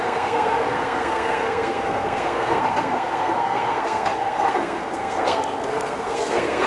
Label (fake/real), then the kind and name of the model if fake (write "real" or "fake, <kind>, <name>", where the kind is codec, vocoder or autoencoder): fake, codec, SNAC